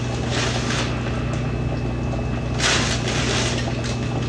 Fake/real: real